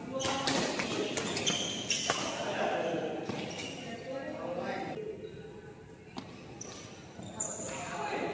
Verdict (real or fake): real